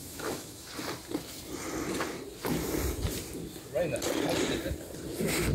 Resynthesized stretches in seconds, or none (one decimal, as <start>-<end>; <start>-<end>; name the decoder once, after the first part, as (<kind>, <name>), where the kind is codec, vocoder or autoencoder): 0.0-0.7 (autoencoder, DAC-VAE)